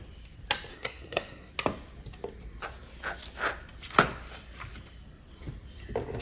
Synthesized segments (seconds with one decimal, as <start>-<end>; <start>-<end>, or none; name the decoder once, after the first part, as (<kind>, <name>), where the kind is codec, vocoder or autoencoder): 0.7-1.5 (codec, SNAC)